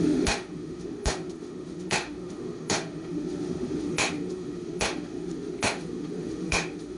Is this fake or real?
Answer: fake